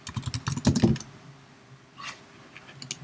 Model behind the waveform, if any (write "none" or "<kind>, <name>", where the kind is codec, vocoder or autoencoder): none